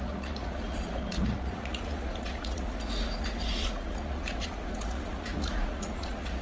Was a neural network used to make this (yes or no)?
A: yes